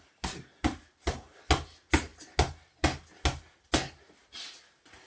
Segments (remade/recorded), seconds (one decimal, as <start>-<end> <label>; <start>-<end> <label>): 0.0-5.1 recorded